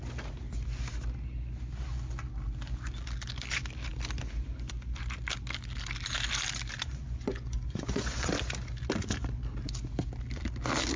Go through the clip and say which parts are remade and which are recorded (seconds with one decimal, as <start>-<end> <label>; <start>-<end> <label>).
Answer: 0.0-6.9 recorded; 6.9-8.3 remade; 8.3-11.0 recorded